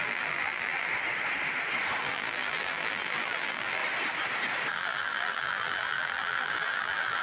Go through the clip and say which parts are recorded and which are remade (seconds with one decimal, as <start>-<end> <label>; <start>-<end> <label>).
0.0-0.9 remade; 0.9-2.0 recorded; 2.0-3.8 remade; 3.8-4.7 recorded; 4.7-7.2 remade